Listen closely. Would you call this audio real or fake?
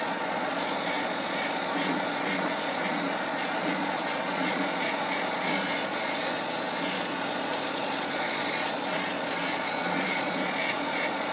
fake